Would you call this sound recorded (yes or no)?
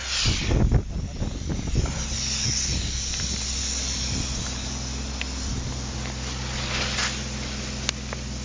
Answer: yes